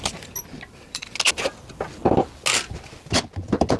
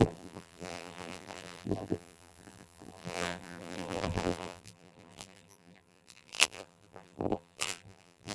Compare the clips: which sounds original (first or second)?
first